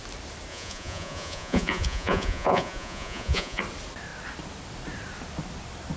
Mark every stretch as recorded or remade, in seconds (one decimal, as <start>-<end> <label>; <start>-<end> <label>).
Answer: 0.0-0.5 recorded; 0.5-3.6 remade; 3.6-6.0 recorded